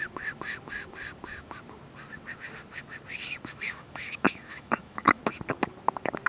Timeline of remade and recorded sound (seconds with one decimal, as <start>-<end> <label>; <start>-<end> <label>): 0.0-3.5 recorded; 3.5-5.2 remade; 5.2-6.3 recorded